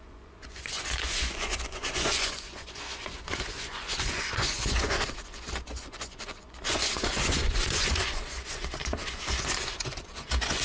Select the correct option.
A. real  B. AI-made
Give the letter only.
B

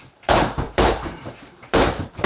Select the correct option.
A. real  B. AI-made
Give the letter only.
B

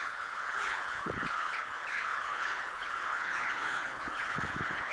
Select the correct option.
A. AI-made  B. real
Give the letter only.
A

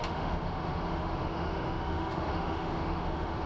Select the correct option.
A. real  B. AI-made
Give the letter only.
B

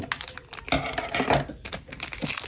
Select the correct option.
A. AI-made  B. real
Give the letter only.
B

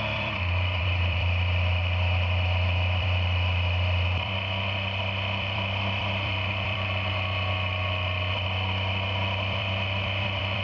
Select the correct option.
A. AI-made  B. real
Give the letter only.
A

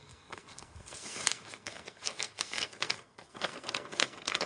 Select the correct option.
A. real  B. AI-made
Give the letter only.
B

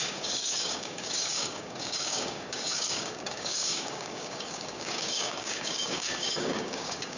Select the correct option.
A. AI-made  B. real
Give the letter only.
A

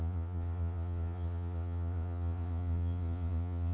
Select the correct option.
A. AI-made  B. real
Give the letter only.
A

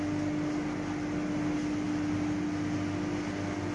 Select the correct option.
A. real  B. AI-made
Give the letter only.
A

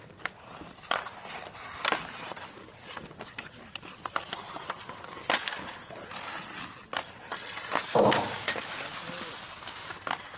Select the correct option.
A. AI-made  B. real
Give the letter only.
B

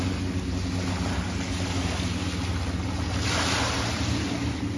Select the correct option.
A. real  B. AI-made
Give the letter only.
A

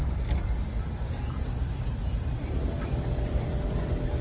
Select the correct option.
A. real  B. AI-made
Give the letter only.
B